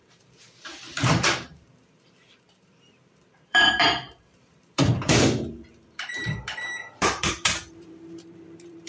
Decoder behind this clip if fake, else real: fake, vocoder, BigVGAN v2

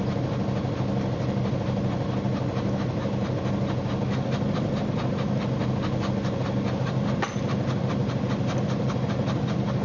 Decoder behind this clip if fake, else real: real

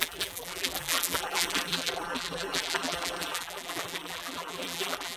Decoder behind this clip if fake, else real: fake, vocoder, BigVGAN v2